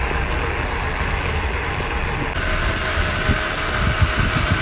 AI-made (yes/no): no